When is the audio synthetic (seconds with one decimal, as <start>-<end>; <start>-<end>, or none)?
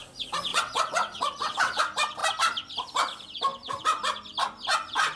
0.5-1.8